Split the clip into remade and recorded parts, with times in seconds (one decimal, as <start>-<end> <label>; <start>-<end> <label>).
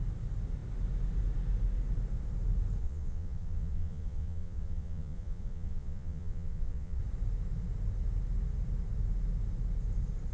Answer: 0.0-2.8 recorded; 2.8-7.0 remade; 7.0-10.3 recorded